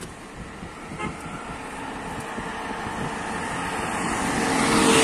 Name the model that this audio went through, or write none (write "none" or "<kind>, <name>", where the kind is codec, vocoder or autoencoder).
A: none